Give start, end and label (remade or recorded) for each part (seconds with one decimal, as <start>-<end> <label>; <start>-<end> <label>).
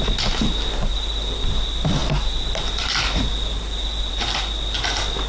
0.0-5.3 recorded